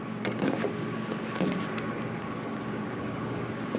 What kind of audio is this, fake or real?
fake